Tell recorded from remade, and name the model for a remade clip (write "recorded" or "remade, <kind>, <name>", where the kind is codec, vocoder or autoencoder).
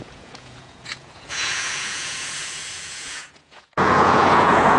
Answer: remade, vocoder, Vocos